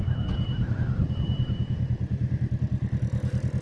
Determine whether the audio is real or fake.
real